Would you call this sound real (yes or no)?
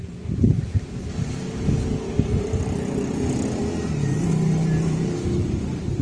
yes